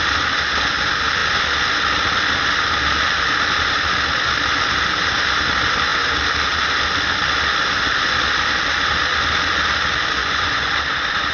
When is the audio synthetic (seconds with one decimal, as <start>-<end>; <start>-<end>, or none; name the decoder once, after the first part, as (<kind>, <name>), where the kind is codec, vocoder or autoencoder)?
10.2-10.7 (vocoder, Vocos)